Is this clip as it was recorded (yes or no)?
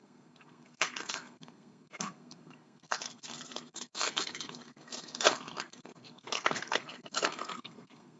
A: no